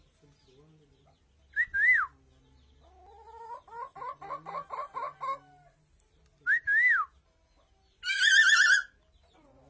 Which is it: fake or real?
real